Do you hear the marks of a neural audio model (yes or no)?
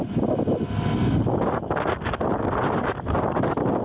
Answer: no